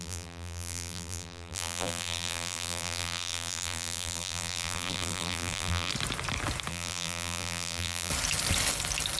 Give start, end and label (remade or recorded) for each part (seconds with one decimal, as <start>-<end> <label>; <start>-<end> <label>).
0.0-5.9 remade; 5.9-6.7 recorded; 6.7-8.1 remade; 8.1-9.2 recorded